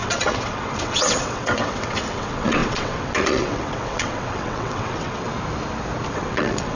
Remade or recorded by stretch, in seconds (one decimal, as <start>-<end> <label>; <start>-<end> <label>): 0.0-5.3 remade; 5.3-6.1 recorded; 6.1-6.7 remade